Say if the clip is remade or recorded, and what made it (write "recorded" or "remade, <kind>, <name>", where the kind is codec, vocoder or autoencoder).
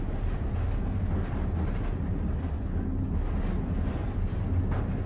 recorded